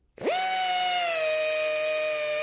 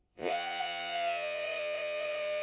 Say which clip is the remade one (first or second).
second